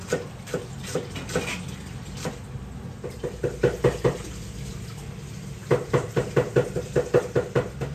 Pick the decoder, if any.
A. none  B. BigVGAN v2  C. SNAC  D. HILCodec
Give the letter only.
A